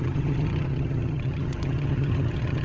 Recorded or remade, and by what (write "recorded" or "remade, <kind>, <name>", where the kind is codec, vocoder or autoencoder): remade, vocoder, HiFi-GAN